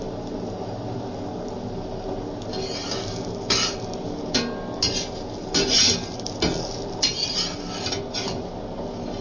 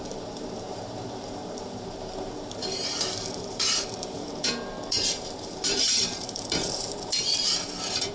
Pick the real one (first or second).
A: first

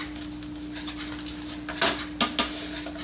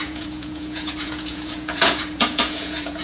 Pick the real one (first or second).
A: first